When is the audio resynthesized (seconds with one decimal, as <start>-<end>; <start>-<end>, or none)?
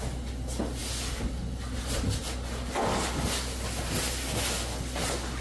none